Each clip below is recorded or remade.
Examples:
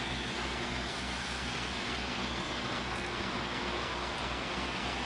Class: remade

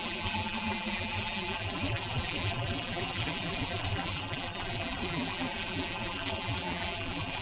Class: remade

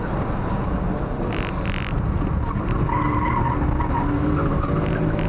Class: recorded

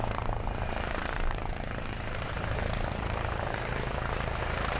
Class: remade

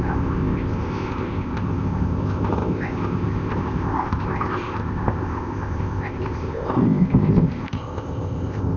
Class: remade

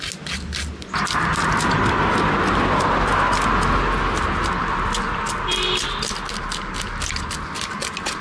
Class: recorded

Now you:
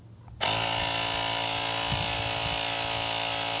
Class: recorded